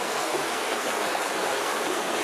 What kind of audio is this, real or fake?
fake